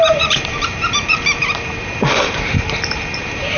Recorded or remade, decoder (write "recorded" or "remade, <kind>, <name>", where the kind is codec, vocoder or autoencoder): remade, vocoder, BigVGAN v2